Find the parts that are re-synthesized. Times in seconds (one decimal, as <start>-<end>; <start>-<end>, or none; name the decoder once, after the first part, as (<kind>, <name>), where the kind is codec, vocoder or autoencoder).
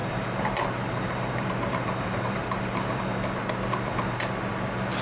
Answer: 0.0-3.0 (vocoder, BigVGAN v2)